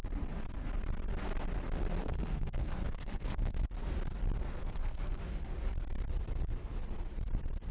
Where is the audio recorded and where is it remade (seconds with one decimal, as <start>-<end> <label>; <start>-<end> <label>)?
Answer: 0.0-2.0 recorded; 2.0-3.6 remade; 3.6-4.4 recorded; 4.4-5.2 remade; 5.2-7.7 recorded